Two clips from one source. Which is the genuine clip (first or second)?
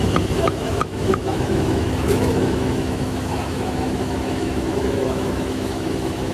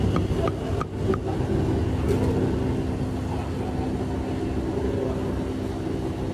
second